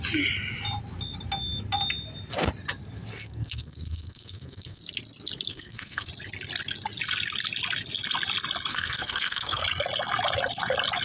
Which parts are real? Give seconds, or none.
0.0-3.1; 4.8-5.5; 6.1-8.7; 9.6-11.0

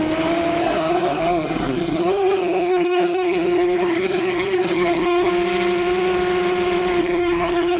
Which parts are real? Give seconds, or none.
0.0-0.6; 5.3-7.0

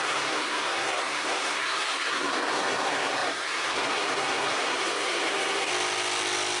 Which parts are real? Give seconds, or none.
5.7-6.6

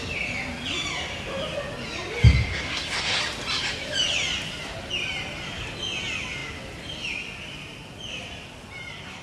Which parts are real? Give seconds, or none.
0.0-2.5; 3.2-9.2

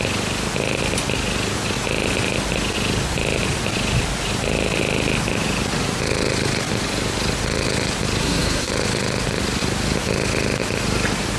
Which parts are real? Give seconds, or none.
0.0-8.2; 8.7-11.4

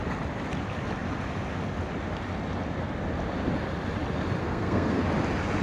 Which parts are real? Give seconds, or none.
0.0-4.4; 5.0-5.6

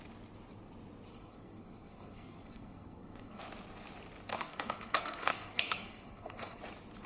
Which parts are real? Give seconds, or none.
0.0-1.1; 3.4-4.3; 6.6-7.1